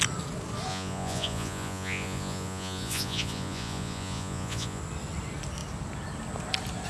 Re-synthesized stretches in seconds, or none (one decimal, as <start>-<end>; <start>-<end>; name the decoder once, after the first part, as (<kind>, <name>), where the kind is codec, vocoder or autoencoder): 0.7-4.8 (vocoder, Vocos)